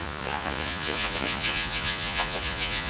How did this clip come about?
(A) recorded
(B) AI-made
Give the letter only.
B